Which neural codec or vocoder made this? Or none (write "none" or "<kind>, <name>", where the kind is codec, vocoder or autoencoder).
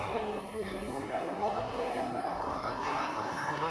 codec, SNAC